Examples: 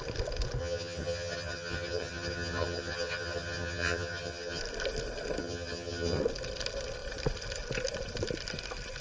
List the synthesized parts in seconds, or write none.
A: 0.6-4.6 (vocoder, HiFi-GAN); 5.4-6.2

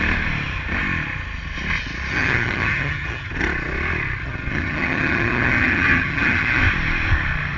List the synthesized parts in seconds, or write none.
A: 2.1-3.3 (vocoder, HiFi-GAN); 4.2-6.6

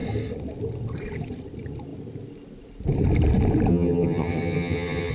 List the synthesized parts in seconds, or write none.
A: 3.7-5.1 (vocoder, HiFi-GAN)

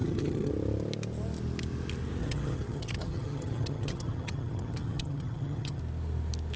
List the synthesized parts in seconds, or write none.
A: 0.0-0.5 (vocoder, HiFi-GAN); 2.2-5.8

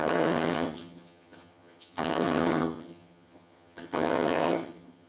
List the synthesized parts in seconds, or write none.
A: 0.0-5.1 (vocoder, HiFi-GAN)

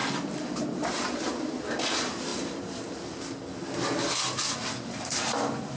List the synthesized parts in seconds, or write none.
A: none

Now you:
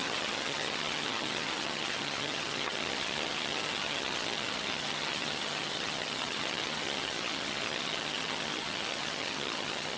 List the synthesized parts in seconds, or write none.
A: 0.0-10.0 (vocoder, HiFi-GAN)